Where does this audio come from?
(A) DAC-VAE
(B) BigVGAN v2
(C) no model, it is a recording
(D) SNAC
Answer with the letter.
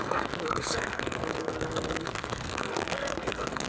D